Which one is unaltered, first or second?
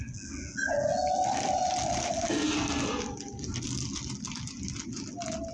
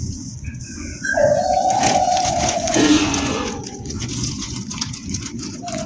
first